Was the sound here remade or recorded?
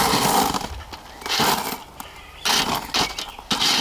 recorded